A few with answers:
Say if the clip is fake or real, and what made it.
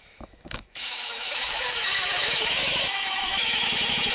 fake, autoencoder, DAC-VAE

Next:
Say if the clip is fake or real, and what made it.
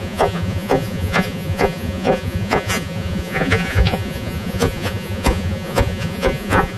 fake, vocoder, Vocos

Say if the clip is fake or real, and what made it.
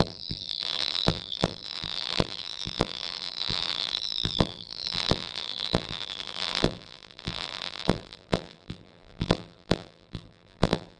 fake, vocoder, BigVGAN v2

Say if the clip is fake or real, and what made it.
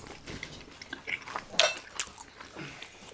real